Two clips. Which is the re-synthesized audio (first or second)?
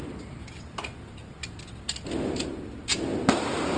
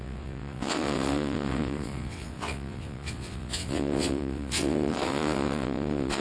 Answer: second